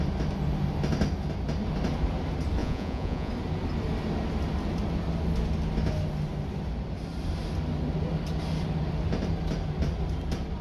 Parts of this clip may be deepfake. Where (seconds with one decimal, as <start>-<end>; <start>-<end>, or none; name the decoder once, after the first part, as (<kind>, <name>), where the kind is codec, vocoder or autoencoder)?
2.6-3.3 (vocoder, Vocos)